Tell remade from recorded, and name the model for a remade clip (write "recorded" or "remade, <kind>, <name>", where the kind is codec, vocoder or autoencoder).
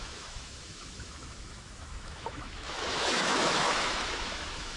remade, autoencoder, DAC-VAE